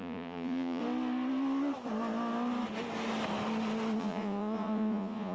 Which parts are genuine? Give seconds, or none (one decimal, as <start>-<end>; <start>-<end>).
0.8-4.0